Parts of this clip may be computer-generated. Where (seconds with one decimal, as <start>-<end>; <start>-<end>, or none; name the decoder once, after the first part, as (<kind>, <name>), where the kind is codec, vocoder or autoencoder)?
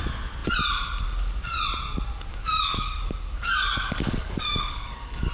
2.3-5.3 (codec, DAC)